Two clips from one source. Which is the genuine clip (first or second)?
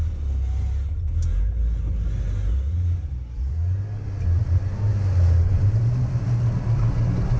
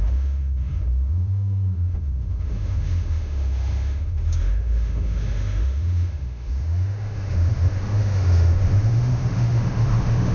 first